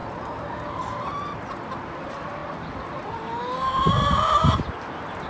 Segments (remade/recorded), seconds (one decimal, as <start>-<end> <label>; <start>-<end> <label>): 0.0-5.3 recorded